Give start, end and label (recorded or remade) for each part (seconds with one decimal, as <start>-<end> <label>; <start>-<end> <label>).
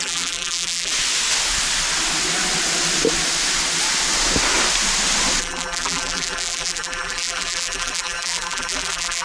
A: 0.0-0.9 remade; 0.9-5.4 recorded; 5.4-9.2 remade